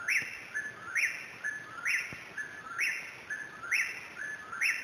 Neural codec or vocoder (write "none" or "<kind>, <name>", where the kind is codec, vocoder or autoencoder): none